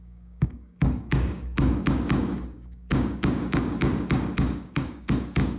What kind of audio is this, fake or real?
fake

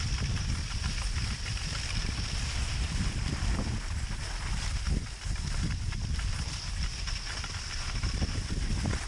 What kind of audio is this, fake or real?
fake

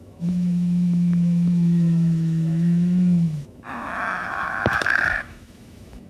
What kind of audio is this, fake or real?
fake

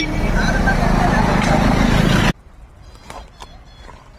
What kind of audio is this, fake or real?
real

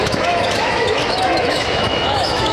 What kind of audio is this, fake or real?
fake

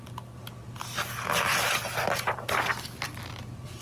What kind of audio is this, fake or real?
real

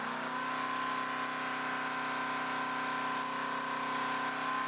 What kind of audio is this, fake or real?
real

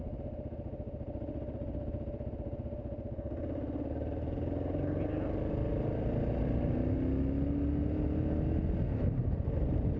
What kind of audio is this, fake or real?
real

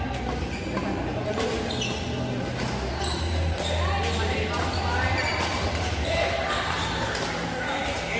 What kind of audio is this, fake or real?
real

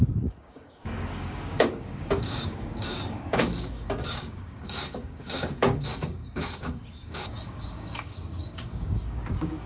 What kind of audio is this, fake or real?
fake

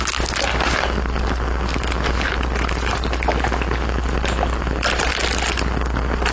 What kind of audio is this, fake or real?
real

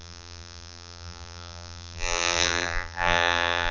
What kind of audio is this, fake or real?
fake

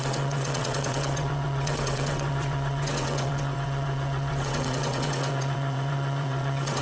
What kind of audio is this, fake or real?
fake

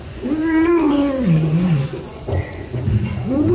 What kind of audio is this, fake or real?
fake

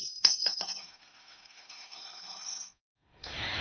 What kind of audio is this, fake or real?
fake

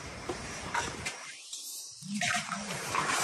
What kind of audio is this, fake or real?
fake